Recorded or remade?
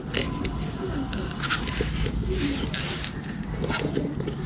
recorded